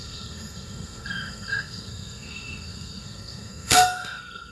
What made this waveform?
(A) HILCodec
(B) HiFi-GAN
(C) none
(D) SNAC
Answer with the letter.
D